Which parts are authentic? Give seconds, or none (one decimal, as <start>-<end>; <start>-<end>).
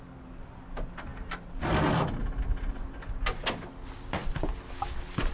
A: 0.0-5.3